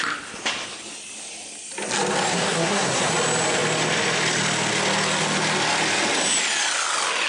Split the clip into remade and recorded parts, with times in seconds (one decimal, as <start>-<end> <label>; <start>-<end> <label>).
0.0-2.3 recorded; 2.3-3.1 remade; 3.1-7.3 recorded